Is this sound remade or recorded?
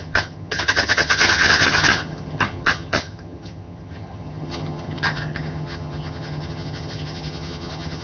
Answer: remade